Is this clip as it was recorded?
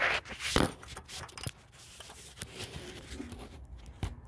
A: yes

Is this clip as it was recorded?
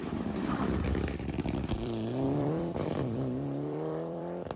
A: no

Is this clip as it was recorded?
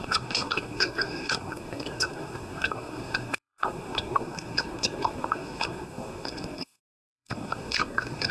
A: no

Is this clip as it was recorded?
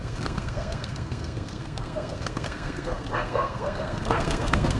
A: no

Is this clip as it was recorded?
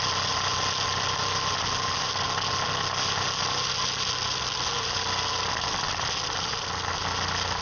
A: yes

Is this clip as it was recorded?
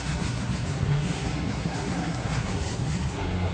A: no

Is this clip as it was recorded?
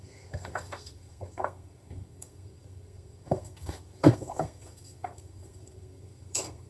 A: no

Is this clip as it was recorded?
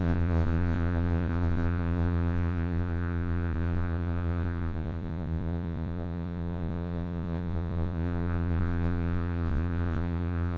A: no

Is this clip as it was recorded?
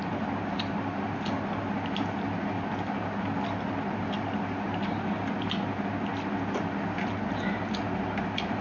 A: yes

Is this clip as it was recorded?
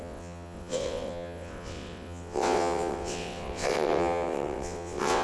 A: no